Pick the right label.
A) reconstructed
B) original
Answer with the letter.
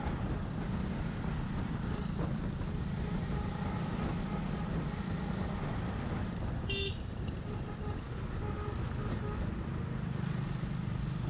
B